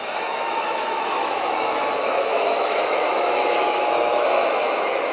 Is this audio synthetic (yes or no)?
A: yes